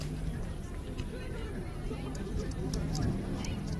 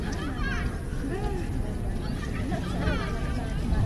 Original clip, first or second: second